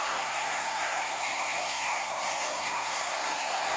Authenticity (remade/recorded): remade